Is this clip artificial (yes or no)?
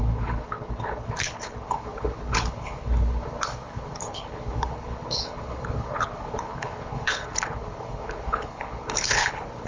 yes